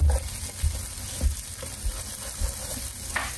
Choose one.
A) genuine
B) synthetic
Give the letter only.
A